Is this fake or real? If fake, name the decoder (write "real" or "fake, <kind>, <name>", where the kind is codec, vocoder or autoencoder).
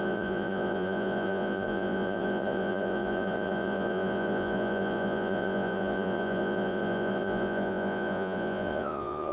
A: fake, vocoder, Vocos